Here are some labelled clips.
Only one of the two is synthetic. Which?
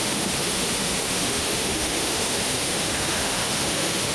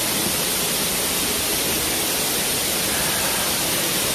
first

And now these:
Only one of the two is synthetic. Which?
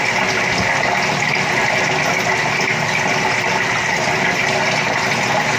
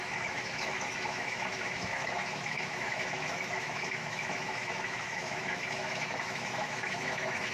second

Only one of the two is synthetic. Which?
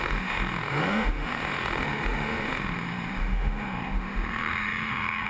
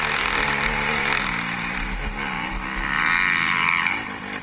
first